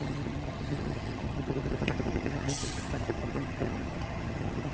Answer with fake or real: fake